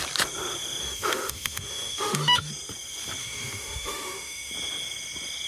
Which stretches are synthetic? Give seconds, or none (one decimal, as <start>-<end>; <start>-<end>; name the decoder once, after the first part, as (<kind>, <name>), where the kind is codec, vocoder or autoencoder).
0.8-2.5 (autoencoder, DAC-VAE); 3.2-4.5